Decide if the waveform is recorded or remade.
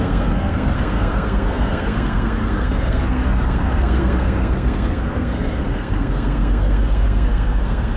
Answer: remade